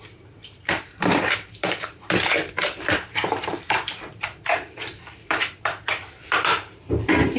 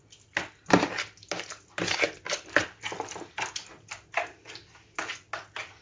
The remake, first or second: first